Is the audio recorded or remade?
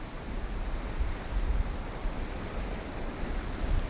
recorded